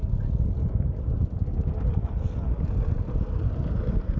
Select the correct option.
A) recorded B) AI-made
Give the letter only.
A